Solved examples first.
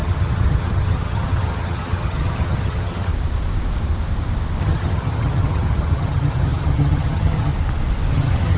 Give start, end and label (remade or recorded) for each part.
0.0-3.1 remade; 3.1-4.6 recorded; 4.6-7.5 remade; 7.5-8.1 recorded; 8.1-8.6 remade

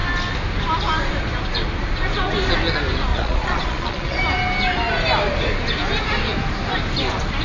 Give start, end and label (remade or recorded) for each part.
0.0-3.1 recorded; 3.1-4.2 remade; 4.2-7.4 recorded

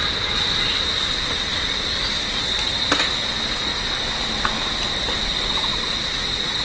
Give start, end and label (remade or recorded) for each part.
0.0-5.7 recorded; 5.7-6.6 remade

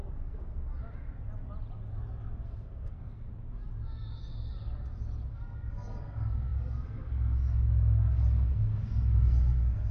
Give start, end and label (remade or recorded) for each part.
0.0-0.7 remade; 0.7-2.4 recorded; 2.4-3.3 remade; 3.3-5.3 recorded; 5.3-9.9 remade

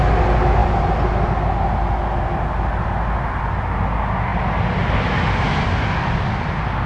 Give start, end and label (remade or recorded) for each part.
0.0-6.9 recorded